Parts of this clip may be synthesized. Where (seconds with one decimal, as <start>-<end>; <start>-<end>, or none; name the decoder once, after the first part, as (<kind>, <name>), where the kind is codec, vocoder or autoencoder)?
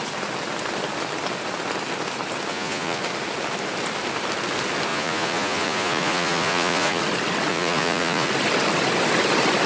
2.5-3.0 (vocoder, Vocos); 4.9-7.0; 7.5-8.3